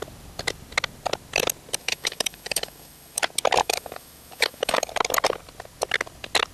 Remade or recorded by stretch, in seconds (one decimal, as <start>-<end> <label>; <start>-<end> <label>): 0.0-1.8 recorded; 1.8-3.2 remade; 3.2-3.6 recorded; 3.6-4.9 remade; 4.9-6.5 recorded